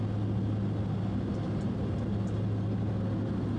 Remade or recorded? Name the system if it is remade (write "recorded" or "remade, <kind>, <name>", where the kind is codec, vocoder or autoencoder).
recorded